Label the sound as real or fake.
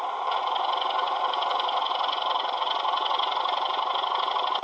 real